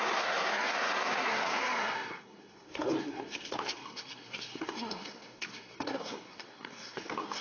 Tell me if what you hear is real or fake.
fake